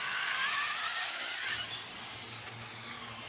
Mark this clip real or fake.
real